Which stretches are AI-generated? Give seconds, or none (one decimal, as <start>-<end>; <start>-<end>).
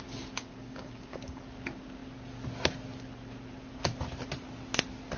0.4-1.4